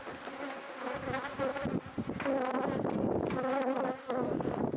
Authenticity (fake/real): real